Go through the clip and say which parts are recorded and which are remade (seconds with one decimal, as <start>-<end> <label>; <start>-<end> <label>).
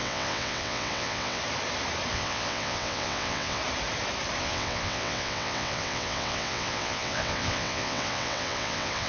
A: 0.0-1.4 remade; 1.4-2.1 recorded; 2.1-3.6 remade; 3.6-4.4 recorded; 4.4-9.1 remade